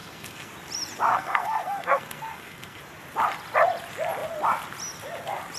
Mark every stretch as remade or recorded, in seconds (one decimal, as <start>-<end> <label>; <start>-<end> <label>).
0.0-0.5 remade; 0.5-1.1 recorded; 1.1-2.8 remade; 2.8-5.6 recorded